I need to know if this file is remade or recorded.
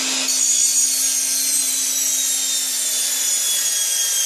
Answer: recorded